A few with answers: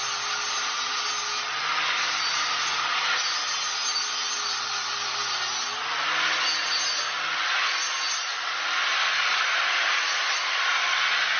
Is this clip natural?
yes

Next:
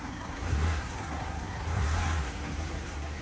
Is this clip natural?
no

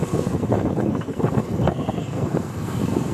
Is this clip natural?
no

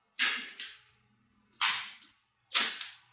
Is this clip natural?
yes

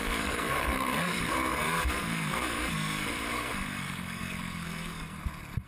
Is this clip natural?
no